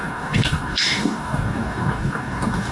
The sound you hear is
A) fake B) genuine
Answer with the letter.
A